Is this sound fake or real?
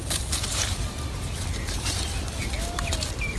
real